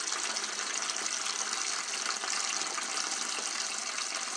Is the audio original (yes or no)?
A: yes